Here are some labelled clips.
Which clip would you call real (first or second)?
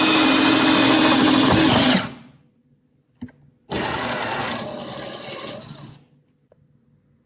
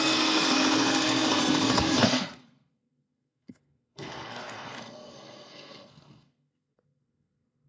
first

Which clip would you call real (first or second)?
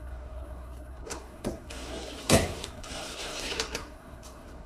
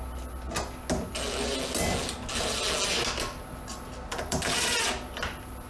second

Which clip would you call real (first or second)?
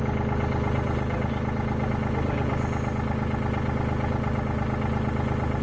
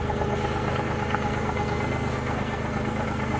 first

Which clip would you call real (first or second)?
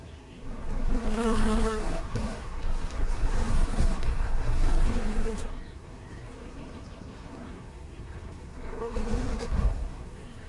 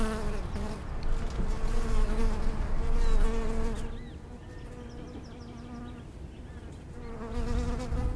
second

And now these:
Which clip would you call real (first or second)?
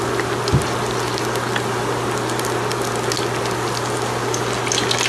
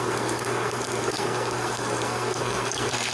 first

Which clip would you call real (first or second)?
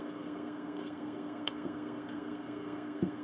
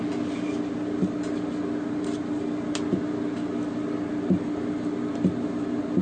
second